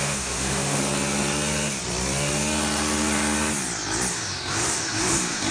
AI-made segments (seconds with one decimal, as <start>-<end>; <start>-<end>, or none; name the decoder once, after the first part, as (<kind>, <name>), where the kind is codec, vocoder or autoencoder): 0.0-0.8 (autoencoder, DAC-VAE); 4.1-5.5